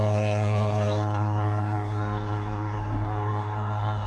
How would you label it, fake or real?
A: fake